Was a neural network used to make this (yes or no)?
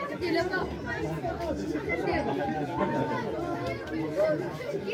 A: no